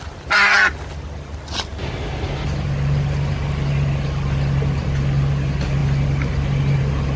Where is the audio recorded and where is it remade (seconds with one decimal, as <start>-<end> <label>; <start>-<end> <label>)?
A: 0.0-7.2 recorded